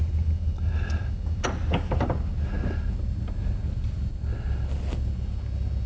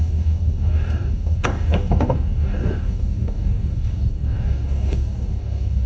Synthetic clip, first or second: second